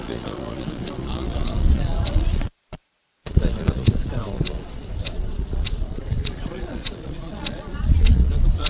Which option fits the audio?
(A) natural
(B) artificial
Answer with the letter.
B